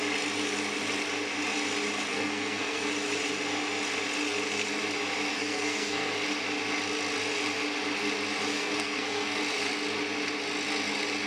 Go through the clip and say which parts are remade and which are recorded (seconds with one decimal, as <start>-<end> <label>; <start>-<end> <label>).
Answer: 0.0-2.1 recorded; 2.1-2.9 remade; 2.9-5.3 recorded; 5.3-6.1 remade; 6.1-8.5 recorded; 8.5-9.4 remade; 9.4-11.3 recorded